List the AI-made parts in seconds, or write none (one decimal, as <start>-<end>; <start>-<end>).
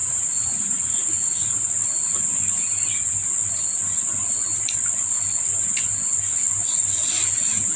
0.0-1.7